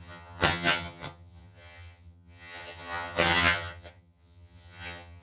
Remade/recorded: remade